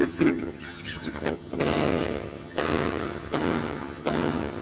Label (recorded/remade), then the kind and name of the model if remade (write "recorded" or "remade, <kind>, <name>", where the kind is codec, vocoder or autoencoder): remade, vocoder, HiFi-GAN